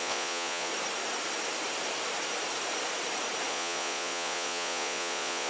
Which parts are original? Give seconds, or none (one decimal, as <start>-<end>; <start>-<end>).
0.7-3.5